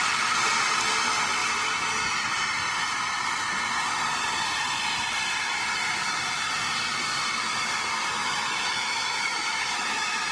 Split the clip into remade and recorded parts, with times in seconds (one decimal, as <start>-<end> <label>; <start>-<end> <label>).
0.0-8.1 recorded; 8.1-10.3 remade

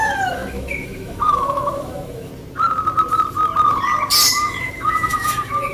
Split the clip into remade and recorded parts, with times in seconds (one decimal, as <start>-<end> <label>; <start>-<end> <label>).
0.0-2.3 remade; 2.3-4.3 recorded; 4.3-5.7 remade

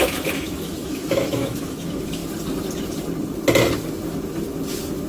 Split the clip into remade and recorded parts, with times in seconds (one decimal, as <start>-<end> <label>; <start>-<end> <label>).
0.0-2.2 remade; 2.2-5.1 recorded

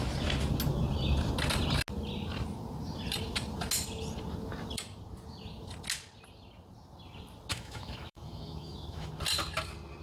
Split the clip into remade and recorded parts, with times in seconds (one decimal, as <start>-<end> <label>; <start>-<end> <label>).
0.0-7.5 recorded; 7.5-9.1 remade; 9.1-10.0 recorded

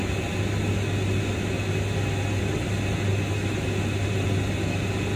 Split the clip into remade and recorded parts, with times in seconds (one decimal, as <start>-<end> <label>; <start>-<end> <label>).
0.0-5.2 recorded

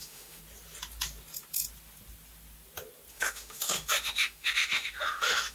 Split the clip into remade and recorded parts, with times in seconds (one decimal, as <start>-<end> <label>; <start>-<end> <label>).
0.0-0.4 remade; 0.4-3.1 recorded; 3.1-5.5 remade